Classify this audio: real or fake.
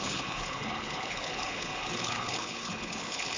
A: fake